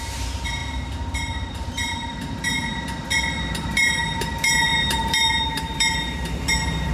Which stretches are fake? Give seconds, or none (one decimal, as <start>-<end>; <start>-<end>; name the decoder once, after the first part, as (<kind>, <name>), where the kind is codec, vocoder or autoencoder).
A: 0.0-0.6 (vocoder, BigVGAN v2); 1.2-2.7; 3.7-6.9